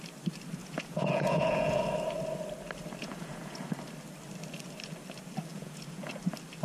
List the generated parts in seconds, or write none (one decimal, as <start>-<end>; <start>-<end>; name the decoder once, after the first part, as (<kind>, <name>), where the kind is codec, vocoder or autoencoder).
0.6-1.8 (vocoder, Vocos); 3.0-3.7; 5.5-6.1